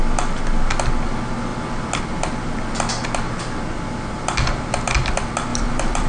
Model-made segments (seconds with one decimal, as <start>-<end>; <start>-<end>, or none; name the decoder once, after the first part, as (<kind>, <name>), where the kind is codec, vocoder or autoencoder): 5.5-6.1 (vocoder, BigVGAN v2)